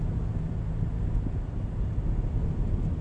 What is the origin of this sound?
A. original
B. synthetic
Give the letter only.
A